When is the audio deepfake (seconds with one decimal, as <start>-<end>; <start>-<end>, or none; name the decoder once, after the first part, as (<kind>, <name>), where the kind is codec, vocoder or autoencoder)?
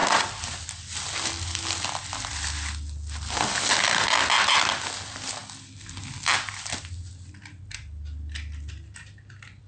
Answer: none